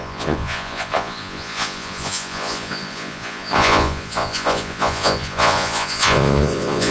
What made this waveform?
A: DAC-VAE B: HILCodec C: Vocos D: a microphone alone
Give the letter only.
C